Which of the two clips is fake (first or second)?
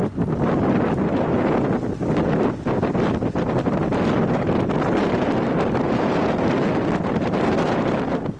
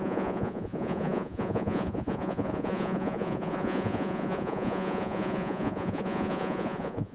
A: second